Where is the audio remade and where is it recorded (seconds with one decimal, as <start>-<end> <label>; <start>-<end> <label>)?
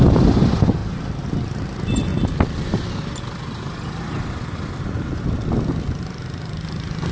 0.0-7.1 recorded